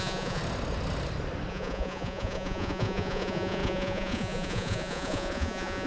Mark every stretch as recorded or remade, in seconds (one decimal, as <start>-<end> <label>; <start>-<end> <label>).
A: 0.0-0.4 remade; 0.4-1.5 recorded; 1.5-5.9 remade